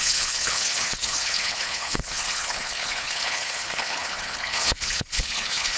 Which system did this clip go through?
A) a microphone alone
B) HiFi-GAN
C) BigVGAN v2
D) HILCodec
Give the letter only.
D